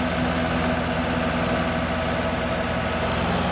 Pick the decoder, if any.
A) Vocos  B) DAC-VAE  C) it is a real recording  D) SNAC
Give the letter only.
C